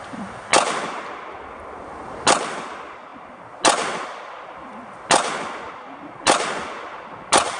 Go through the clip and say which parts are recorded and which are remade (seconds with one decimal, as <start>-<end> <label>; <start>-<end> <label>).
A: 0.0-7.6 recorded